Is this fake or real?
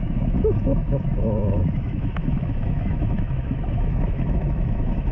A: fake